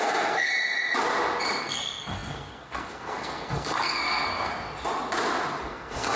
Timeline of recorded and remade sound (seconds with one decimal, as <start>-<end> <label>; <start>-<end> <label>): 0.0-0.5 remade; 0.5-1.6 recorded; 1.6-4.5 remade; 4.5-5.6 recorded; 5.6-6.2 remade